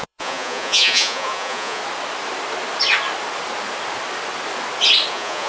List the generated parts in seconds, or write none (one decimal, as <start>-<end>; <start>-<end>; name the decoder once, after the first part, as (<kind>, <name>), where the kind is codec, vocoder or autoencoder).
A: 0.0-1.8 (vocoder, Vocos); 5.1-5.5